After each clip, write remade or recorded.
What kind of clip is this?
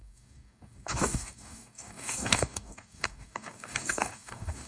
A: remade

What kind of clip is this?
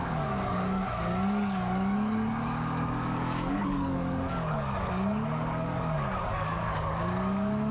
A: remade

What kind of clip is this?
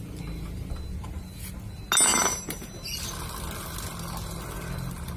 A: recorded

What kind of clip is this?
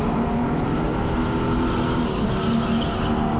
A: recorded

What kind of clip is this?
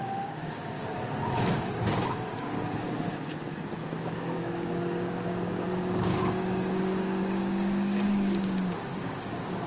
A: remade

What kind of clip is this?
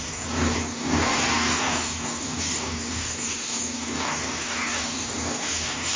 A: remade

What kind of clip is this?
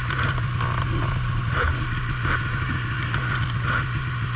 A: recorded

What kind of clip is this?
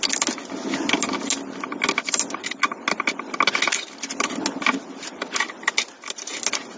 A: recorded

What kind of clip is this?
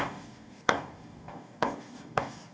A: remade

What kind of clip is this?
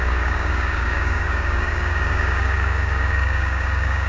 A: remade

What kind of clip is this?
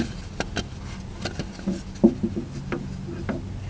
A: recorded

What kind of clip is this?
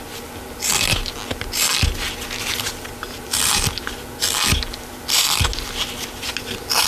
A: recorded